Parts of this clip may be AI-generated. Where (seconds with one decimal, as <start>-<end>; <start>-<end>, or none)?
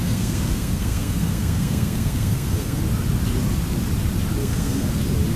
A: 0.0-2.8; 4.4-4.9